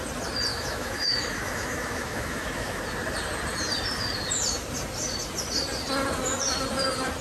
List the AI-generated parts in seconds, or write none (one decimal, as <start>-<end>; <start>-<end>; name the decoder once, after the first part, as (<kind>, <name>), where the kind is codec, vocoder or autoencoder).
0.5-2.8 (autoencoder, DAC-VAE)